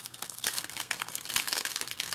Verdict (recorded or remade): remade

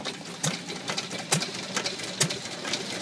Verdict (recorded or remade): recorded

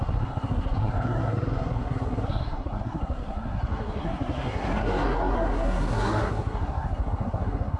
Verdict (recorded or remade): remade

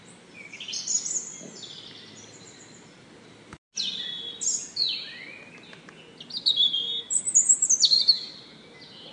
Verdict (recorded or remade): recorded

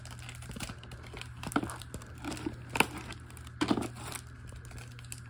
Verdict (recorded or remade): recorded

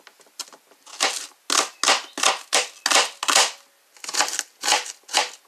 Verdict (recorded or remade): recorded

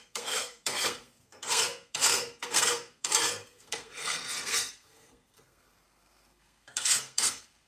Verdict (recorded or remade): remade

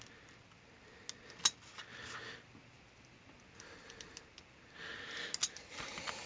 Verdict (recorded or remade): recorded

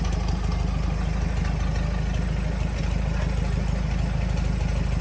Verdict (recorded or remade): recorded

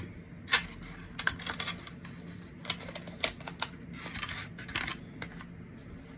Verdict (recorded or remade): recorded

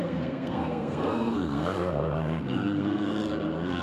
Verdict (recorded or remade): remade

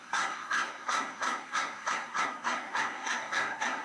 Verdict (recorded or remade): remade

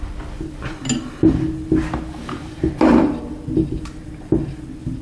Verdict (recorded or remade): recorded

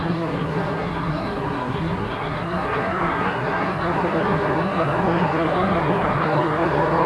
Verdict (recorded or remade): remade